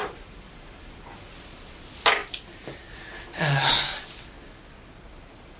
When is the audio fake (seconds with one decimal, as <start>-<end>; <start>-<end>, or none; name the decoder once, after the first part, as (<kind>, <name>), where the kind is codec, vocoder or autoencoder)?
0.0-0.9 (vocoder, BigVGAN v2)